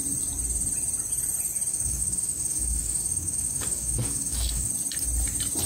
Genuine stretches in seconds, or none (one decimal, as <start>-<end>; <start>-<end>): 0.0-1.7; 4.7-5.7